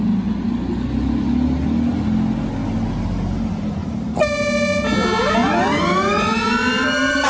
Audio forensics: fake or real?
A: real